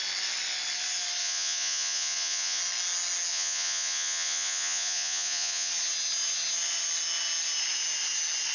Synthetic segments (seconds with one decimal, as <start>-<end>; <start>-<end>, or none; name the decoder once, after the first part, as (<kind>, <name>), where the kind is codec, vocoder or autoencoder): 1.2-2.6 (vocoder, Vocos); 3.3-5.7